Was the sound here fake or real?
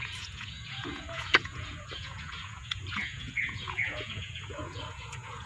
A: fake